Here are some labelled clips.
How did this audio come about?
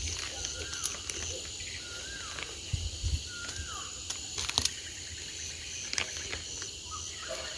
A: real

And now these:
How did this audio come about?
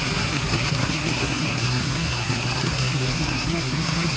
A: fake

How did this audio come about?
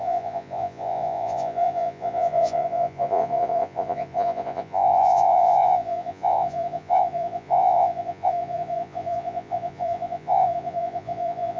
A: fake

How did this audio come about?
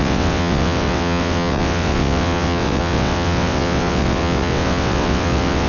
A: fake